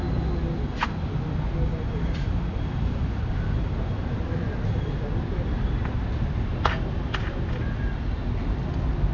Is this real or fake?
real